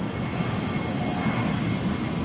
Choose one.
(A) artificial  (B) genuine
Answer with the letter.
B